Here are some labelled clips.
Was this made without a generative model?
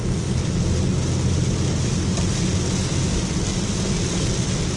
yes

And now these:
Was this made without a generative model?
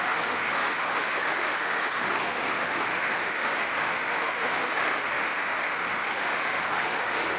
no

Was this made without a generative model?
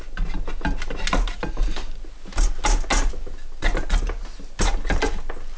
yes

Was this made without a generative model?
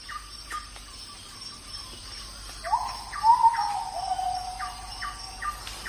yes